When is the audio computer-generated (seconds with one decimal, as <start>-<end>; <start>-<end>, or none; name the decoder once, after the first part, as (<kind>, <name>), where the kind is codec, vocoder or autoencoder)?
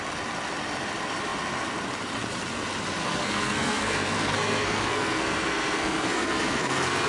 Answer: 3.0-7.1 (codec, SNAC)